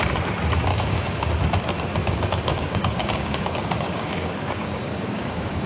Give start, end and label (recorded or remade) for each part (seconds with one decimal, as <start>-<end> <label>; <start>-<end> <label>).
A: 0.0-0.7 recorded; 0.7-1.3 remade; 1.3-2.0 recorded; 2.0-5.7 remade